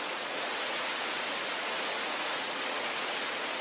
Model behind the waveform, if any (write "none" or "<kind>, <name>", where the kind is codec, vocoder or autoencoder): vocoder, Vocos